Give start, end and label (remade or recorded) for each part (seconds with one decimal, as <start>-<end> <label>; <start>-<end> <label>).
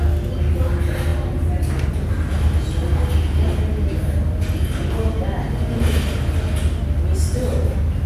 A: 0.0-8.1 recorded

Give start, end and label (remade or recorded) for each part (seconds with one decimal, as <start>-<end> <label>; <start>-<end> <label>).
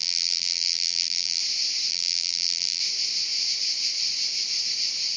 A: 0.0-1.4 remade; 1.4-1.9 recorded; 1.9-2.8 remade; 2.8-5.2 recorded